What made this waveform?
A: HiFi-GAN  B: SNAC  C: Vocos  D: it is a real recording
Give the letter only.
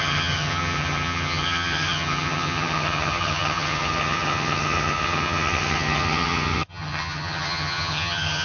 A